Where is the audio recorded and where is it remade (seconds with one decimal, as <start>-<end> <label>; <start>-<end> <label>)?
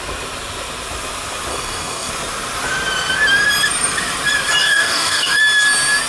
0.0-1.5 recorded; 1.5-2.1 remade; 2.1-4.6 recorded; 4.6-5.4 remade; 5.4-6.1 recorded